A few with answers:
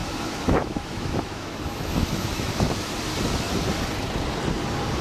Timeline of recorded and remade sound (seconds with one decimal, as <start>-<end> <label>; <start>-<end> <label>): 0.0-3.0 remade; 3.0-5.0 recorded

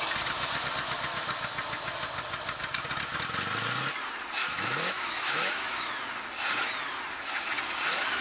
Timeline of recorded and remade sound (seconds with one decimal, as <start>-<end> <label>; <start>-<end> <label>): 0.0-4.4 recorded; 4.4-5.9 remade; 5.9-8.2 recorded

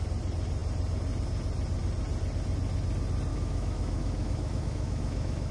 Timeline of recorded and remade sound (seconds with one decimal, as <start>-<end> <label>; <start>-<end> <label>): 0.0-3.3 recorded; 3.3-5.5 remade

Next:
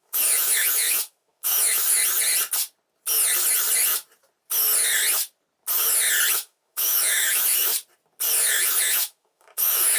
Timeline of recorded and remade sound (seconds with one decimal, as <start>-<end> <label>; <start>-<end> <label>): 0.0-2.0 remade; 2.0-6.3 recorded; 6.3-7.7 remade; 7.7-8.5 recorded; 8.5-10.0 remade

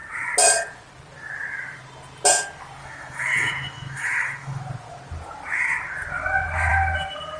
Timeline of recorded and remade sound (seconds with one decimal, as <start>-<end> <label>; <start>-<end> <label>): 0.0-2.8 recorded; 2.8-4.6 remade; 4.6-7.4 recorded

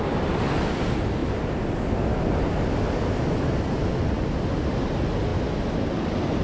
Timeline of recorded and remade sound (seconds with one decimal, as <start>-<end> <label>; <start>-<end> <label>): 0.0-6.4 recorded

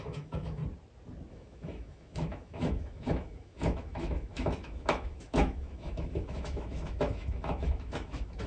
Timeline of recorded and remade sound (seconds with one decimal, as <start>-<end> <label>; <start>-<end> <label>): 0.0-0.6 remade; 0.6-1.3 recorded; 1.3-8.5 remade